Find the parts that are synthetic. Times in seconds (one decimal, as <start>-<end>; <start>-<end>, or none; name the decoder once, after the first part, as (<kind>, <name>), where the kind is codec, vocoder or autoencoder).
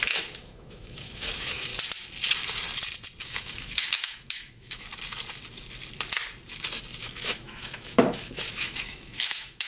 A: 0.0-1.7 (autoencoder, DAC-VAE); 3.2-4.9; 7.0-9.7